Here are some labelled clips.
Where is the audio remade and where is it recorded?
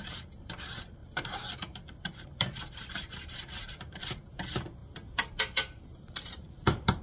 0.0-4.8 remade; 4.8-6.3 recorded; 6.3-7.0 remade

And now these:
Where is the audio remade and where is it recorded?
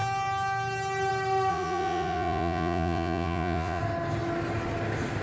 0.0-1.5 recorded; 1.5-3.8 remade; 3.8-5.2 recorded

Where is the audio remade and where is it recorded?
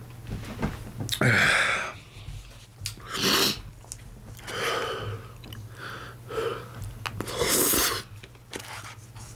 0.0-9.4 recorded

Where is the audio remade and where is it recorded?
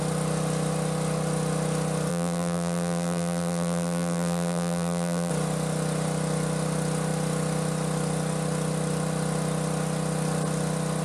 0.0-2.1 recorded; 2.1-5.3 remade; 5.3-11.0 recorded